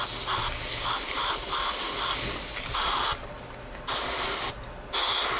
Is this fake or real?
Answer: real